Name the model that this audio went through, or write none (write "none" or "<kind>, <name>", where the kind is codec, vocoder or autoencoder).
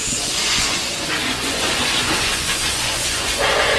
vocoder, Vocos